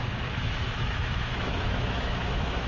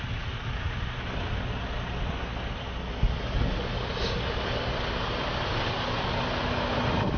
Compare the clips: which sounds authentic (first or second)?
second